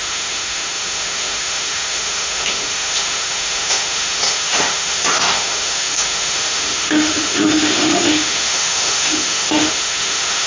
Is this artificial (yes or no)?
yes